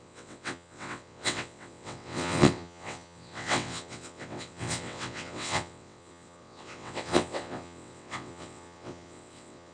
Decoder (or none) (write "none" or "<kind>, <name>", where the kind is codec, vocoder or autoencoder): vocoder, WaveNeXt